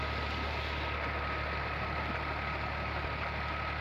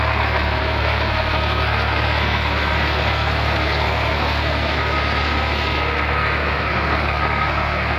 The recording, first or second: first